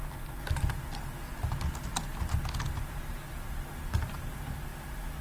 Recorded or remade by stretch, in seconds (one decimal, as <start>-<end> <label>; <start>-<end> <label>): 0.0-5.2 recorded